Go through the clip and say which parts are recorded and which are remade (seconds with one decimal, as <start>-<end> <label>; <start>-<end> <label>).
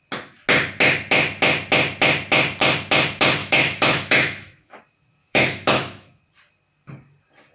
0.0-3.4 recorded; 3.4-4.8 remade; 4.8-5.2 recorded; 5.2-6.2 remade; 6.2-7.5 recorded